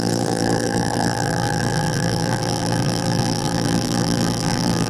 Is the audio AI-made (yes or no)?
yes